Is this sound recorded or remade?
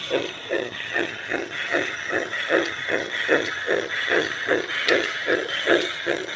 remade